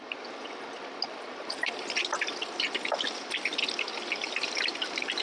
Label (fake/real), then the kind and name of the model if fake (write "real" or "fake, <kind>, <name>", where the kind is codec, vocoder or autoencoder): real